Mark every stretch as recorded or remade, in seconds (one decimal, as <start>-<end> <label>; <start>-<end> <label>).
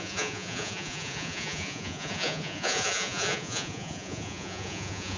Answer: 0.0-5.2 remade